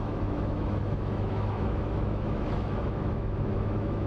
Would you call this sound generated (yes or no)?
yes